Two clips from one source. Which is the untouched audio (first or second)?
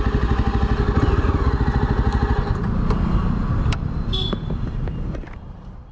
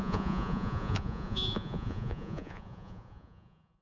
first